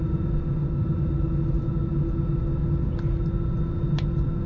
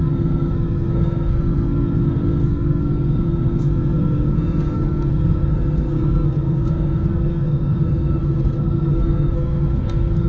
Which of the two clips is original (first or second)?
first